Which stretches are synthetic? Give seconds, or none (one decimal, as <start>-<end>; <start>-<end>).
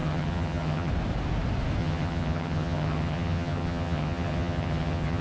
0.0-0.9; 1.8-5.2